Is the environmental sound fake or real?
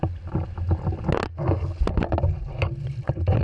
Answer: real